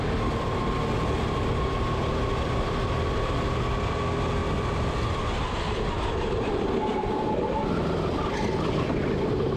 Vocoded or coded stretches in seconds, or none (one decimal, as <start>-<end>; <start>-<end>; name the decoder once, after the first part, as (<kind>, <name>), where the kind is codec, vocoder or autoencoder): none